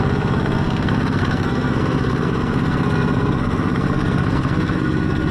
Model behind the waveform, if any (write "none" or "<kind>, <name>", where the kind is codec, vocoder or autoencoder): codec, SNAC